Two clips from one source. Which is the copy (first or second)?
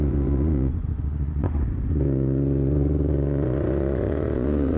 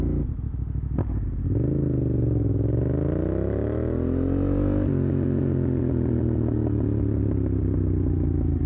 first